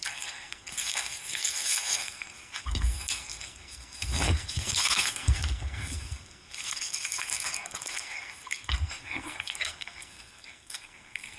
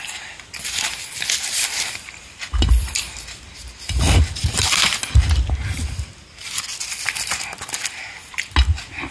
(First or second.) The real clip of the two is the second